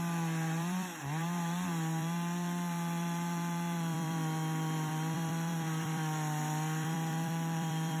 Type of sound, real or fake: fake